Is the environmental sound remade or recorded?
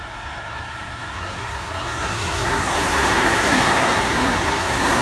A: remade